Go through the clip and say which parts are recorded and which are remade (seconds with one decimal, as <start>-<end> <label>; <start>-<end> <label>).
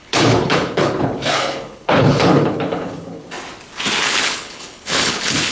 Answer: 0.0-3.2 remade; 3.2-4.0 recorded; 4.0-5.5 remade